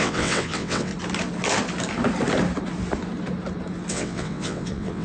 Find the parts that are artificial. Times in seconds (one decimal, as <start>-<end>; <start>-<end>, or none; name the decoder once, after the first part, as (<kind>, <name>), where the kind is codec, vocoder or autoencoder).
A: 0.0-0.9 (vocoder, WaveNeXt); 3.9-5.0